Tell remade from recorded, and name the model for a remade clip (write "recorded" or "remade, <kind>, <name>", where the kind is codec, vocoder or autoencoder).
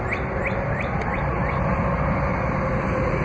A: recorded